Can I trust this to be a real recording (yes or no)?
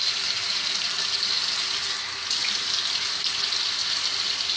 yes